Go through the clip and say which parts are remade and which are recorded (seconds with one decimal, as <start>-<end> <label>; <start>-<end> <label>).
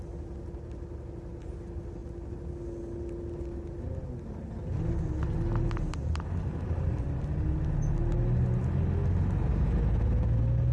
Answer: 0.0-10.7 recorded